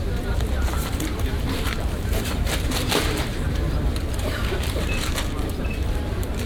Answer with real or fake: fake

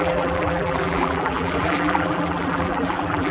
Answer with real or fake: fake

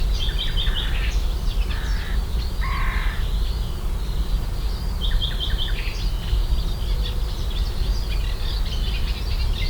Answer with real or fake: real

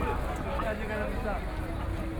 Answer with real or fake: real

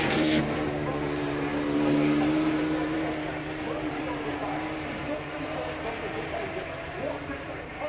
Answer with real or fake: fake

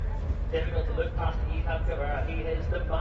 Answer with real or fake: real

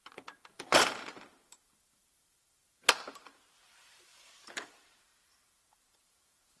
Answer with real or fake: fake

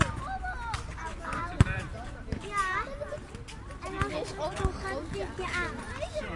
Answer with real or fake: real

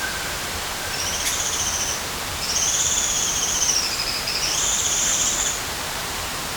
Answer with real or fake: fake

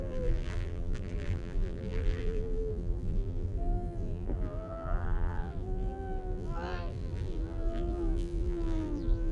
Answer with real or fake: fake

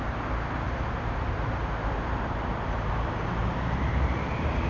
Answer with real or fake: fake